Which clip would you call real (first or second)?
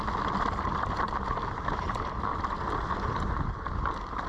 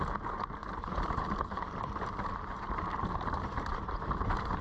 first